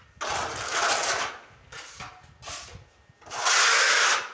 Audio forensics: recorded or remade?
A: recorded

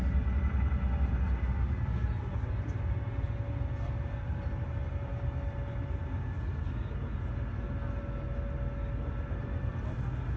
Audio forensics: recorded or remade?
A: recorded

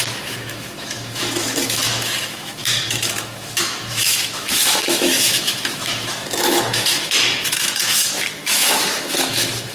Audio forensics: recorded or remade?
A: remade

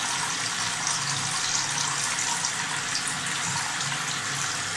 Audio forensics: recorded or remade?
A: recorded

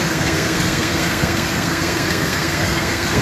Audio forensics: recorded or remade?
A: remade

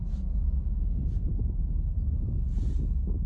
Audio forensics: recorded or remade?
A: recorded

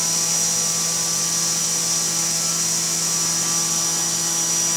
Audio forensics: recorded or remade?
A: recorded